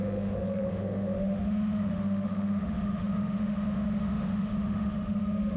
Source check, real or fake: fake